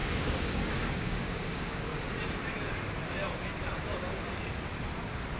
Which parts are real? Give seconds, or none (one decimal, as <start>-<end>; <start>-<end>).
1.9-5.4